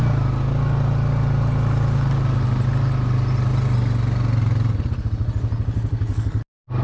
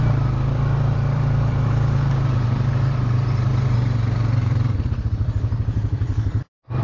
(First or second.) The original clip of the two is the first